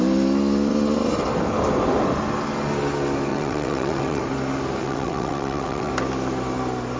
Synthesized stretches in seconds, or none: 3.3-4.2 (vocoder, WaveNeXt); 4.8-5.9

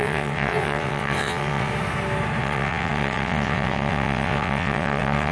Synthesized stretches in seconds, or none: 0.0-1.7 (vocoder, WaveNeXt); 2.4-5.3

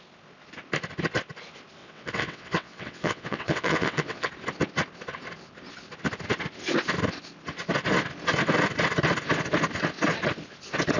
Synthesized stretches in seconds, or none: 1.8-4.3 (vocoder, WaveNeXt)

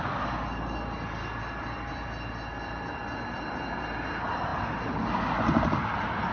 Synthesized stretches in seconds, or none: none

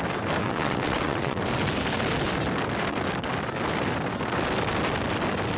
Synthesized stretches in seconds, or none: 0.4-1.4 (vocoder, WaveNeXt)